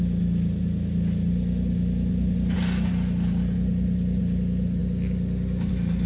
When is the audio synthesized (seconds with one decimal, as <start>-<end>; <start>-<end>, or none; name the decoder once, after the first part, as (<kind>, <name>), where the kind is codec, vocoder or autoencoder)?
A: none

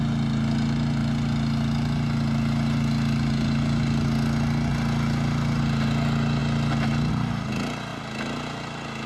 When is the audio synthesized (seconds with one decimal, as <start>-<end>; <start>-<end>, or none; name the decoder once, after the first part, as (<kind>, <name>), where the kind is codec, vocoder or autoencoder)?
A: none

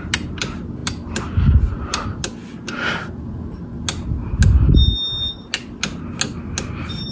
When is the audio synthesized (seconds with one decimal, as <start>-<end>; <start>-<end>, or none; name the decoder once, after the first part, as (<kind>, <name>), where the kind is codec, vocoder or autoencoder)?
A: none

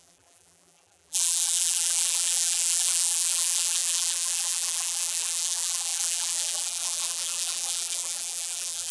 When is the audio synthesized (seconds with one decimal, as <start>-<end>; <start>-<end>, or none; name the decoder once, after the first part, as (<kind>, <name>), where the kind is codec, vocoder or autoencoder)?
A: 0.0-8.9 (vocoder, BigVGAN v2)

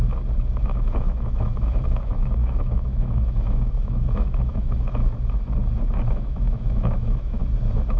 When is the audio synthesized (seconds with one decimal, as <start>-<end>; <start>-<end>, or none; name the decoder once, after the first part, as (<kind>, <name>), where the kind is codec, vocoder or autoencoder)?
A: 0.6-5.0 (autoencoder, DAC-VAE); 6.1-7.4